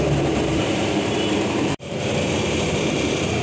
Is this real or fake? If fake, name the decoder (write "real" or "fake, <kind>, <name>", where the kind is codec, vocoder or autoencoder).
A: fake, vocoder, BigVGAN v2